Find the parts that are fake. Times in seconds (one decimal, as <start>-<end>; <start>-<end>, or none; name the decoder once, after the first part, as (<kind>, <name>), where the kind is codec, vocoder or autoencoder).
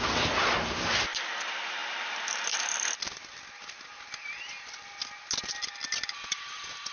none